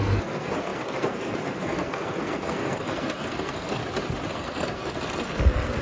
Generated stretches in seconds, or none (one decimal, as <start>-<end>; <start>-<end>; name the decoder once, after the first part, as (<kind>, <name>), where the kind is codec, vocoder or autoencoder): 0.0-3.8 (codec, SNAC); 4.3-5.8